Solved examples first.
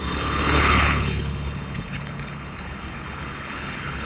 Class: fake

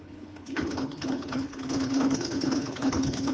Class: fake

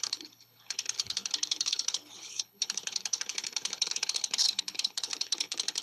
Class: fake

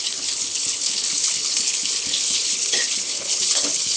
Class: fake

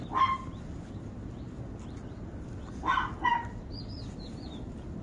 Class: real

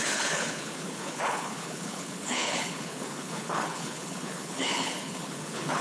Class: fake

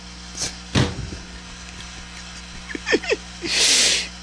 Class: real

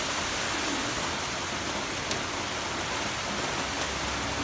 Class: real